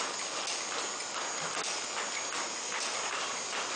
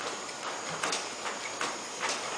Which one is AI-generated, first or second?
second